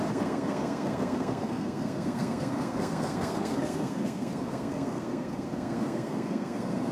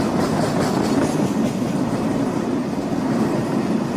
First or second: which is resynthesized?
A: first